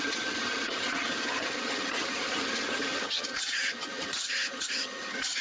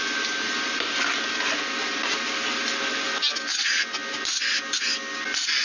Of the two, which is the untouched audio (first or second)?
second